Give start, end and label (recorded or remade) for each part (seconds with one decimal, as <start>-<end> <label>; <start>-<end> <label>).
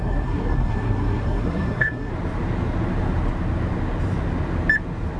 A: 0.0-2.1 remade; 2.1-5.2 recorded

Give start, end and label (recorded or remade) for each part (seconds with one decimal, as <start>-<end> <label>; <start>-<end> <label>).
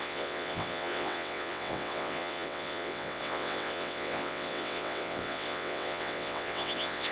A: 0.0-7.1 remade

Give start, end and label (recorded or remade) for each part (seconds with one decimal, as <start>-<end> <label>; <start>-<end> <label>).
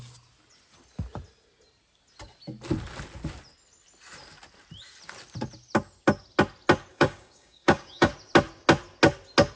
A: 0.0-6.9 recorded; 6.9-8.1 remade; 8.1-9.6 recorded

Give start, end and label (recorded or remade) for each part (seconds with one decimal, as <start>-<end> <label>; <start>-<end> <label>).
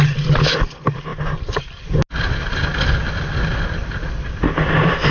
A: 0.0-5.1 recorded